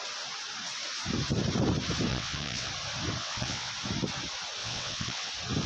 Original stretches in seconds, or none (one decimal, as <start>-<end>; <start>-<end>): 0.0-2.1; 2.7-3.2; 3.7-4.6; 5.3-5.7